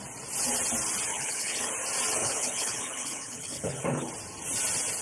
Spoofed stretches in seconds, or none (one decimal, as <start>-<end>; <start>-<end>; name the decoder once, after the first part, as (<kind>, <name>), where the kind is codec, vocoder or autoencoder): 1.1-1.7 (codec, HILCodec); 2.2-4.1